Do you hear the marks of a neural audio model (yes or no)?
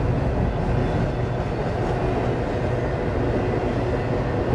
no